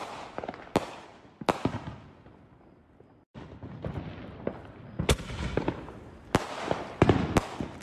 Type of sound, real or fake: real